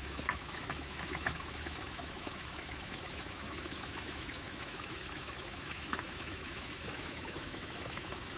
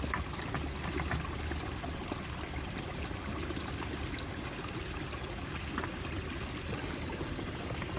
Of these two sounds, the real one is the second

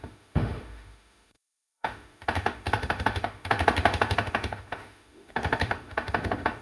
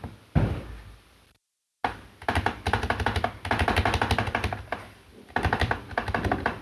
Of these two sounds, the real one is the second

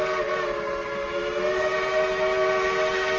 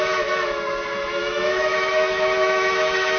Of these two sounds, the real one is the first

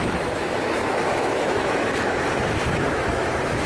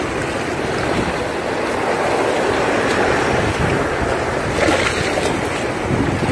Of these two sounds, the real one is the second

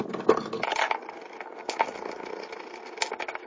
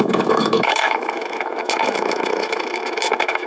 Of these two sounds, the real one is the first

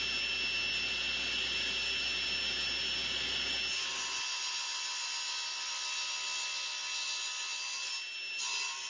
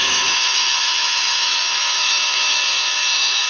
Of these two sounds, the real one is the first